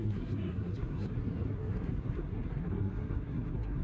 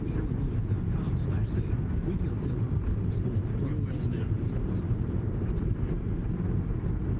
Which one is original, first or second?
second